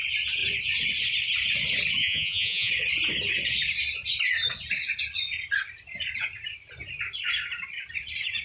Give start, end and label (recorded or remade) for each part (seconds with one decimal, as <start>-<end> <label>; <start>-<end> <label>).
0.0-2.0 recorded; 2.0-2.7 remade; 2.7-8.4 recorded